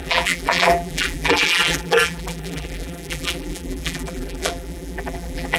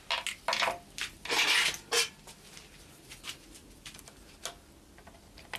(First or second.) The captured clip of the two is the second